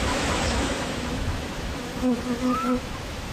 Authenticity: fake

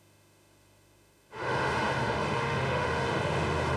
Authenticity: fake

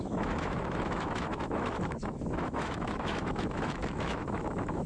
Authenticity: fake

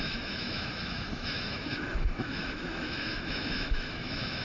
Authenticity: fake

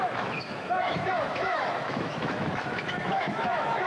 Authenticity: fake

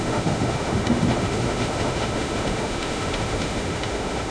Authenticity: fake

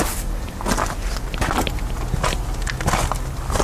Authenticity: real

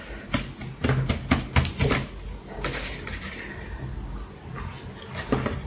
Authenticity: real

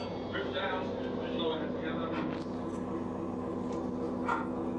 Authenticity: real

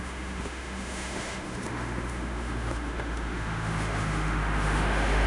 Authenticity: fake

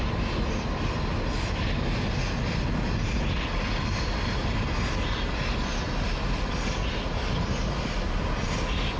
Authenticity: real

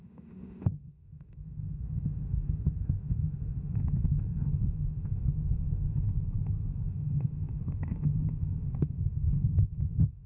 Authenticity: fake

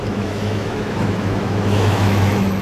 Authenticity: fake